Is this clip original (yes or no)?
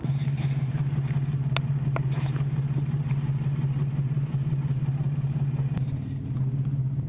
no